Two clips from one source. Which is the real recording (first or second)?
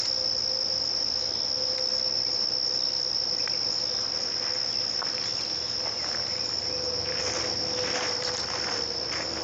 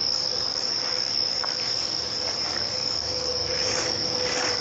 first